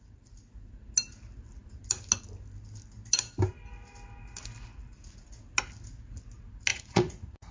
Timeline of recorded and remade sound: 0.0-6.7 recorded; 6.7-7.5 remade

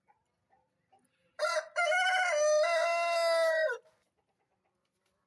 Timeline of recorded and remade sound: 0.0-5.3 recorded

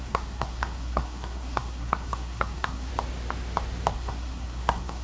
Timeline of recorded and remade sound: 0.0-2.9 remade; 2.9-3.9 recorded; 3.9-5.0 remade

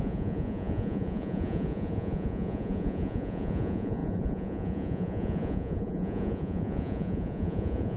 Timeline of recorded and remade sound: 0.0-8.0 remade